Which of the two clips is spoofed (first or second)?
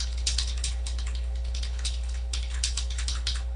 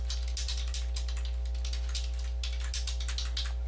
first